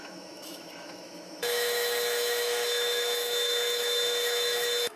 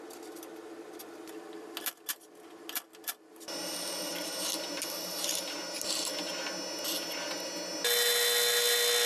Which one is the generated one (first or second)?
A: first